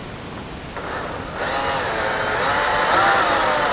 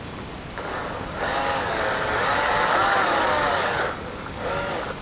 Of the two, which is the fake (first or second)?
second